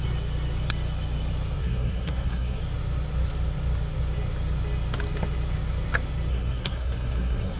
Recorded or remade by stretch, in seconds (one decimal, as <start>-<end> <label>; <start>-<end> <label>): 0.0-1.6 recorded; 1.6-2.6 remade; 2.6-6.3 recorded; 6.3-7.6 remade